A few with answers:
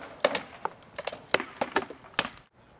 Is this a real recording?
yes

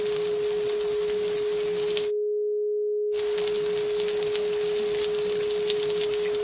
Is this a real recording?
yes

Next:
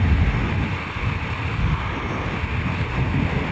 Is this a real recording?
yes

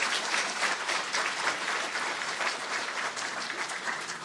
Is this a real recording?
no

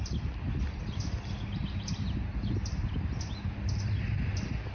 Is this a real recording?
yes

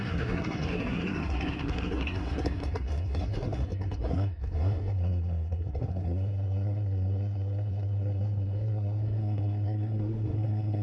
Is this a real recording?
no